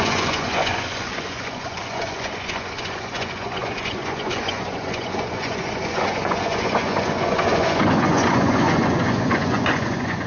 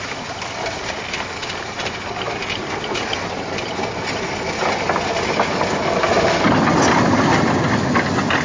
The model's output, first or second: first